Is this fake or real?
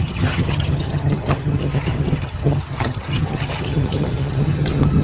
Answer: fake